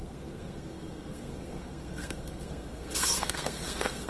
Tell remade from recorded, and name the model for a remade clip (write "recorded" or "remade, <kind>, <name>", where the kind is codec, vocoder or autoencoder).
remade, codec, SNAC